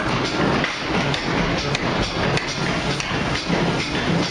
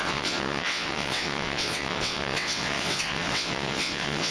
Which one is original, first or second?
first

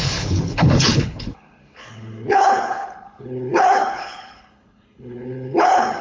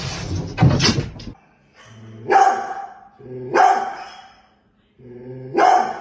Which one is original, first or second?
second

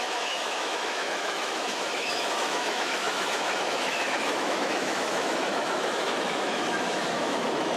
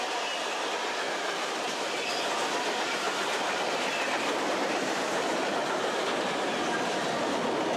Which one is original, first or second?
second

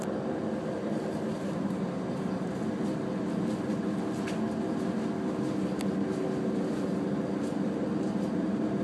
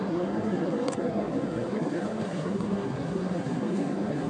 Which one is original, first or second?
first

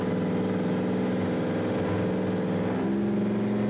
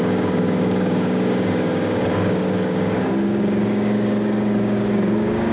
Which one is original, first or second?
first